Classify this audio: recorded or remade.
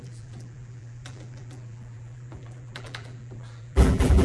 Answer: remade